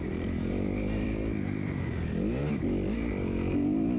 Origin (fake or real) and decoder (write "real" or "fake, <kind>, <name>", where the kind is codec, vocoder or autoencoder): fake, vocoder, BigVGAN v2